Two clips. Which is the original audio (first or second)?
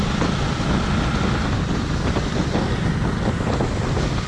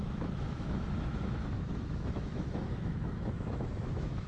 first